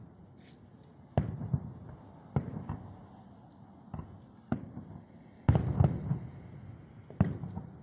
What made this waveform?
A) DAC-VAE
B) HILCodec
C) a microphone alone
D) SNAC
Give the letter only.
C